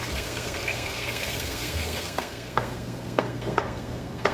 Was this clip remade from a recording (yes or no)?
yes